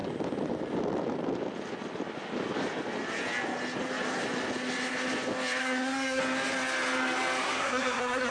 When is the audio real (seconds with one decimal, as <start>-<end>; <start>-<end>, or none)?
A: 0.0-5.6; 6.2-7.4